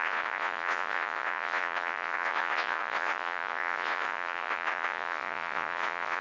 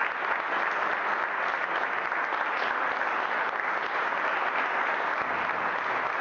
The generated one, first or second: first